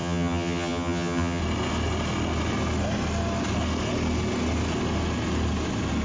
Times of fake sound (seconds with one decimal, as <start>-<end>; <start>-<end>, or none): 0.0-1.4